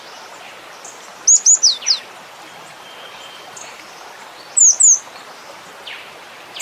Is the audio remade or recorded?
recorded